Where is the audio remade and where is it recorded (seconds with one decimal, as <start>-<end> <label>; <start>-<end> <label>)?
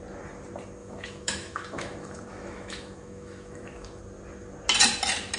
0.0-0.8 recorded; 0.8-4.0 remade; 4.0-5.4 recorded